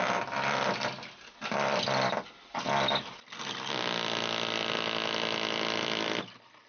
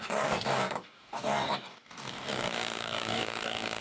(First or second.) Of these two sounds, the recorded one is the first